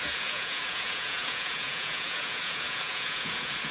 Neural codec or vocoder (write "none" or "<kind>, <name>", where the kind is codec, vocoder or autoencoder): vocoder, Vocos